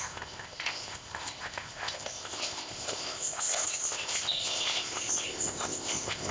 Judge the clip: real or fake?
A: fake